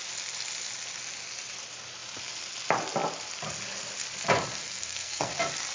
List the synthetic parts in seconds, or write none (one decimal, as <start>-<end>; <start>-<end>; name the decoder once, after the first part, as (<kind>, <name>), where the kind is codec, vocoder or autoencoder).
4.6-5.3 (codec, SNAC)